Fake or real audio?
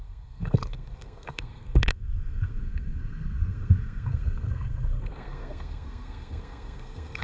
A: fake